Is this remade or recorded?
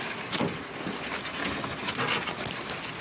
recorded